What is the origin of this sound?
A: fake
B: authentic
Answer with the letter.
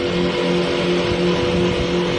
B